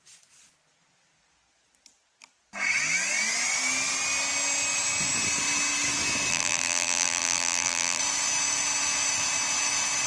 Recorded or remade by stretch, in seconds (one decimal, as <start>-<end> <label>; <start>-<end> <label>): 0.0-6.3 recorded; 6.3-8.0 remade; 8.0-10.1 recorded